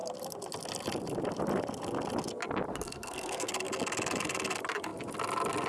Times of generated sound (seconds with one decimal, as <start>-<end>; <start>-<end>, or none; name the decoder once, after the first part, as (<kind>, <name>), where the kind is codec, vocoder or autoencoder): 2.7-3.5 (codec, SNAC)